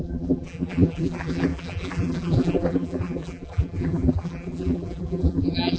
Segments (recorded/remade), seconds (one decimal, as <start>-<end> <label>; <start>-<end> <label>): 0.0-5.8 remade